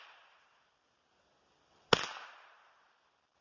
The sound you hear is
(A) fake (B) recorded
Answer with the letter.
B